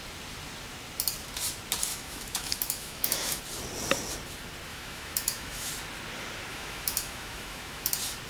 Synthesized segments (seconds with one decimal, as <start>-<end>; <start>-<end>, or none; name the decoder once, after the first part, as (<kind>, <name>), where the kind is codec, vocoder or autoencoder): 1.9-3.4 (autoencoder, DAC-VAE); 4.7-5.7; 6.5-7.9

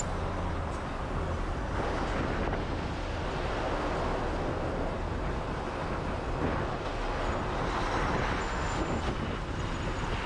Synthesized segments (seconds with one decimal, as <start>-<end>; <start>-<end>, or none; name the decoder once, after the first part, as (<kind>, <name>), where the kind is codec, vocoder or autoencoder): 8.4-9.0 (autoencoder, DAC-VAE)